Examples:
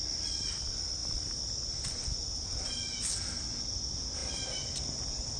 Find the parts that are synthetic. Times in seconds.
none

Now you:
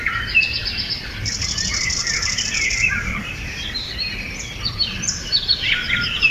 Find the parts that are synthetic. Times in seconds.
2.0-5.3

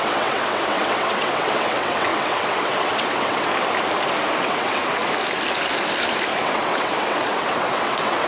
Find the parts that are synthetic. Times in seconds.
0.0-3.5; 4.4-5.0; 6.4-8.3

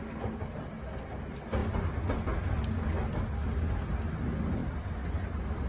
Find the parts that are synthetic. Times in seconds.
none

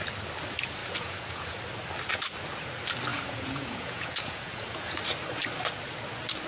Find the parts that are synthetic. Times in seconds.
0.8-1.6; 3.1-5.0

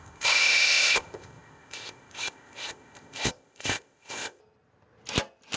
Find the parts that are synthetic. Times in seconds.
0.0-4.4

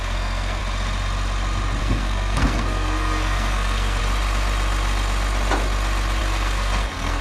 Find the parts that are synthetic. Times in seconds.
0.0-0.6; 1.8-4.0; 6.2-7.2

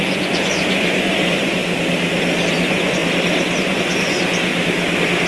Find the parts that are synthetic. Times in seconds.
0.0-1.6; 2.5-3.0; 3.6-4.5